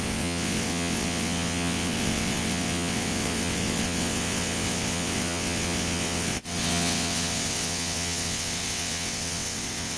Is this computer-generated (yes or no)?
yes